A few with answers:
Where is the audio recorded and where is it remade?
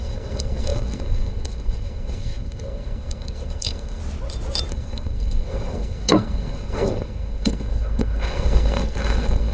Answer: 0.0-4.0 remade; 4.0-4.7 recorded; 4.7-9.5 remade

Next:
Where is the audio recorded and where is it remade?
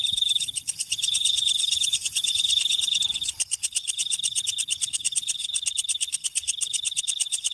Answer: 0.0-7.5 remade